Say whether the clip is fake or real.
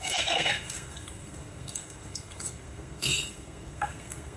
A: fake